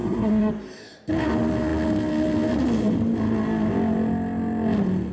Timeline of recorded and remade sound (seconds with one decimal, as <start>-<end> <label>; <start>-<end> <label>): 0.0-0.5 remade; 0.5-5.1 recorded